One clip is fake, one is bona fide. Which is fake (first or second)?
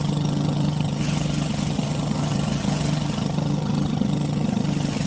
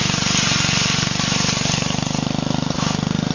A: first